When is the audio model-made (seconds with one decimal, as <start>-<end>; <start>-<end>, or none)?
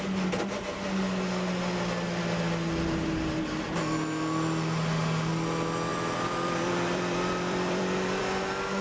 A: 5.9-8.2